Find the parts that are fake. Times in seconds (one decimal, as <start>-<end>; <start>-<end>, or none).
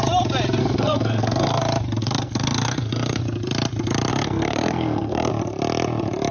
0.6-1.6; 2.0-3.2; 4.1-5.3